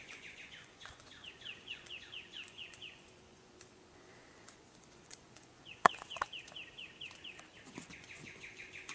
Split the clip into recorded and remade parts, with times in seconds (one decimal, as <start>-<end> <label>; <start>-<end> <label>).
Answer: 0.0-6.2 remade; 6.2-7.6 recorded; 7.6-8.9 remade